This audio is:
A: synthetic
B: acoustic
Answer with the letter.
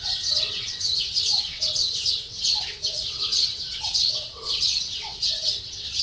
A